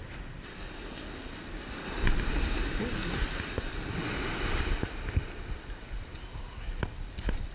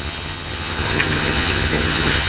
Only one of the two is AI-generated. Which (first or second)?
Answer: second